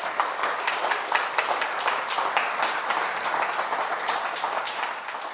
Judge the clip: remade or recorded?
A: recorded